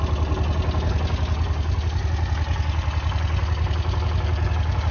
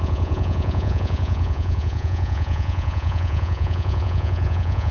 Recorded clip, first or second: first